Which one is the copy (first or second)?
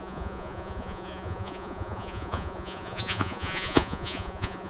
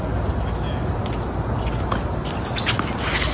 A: first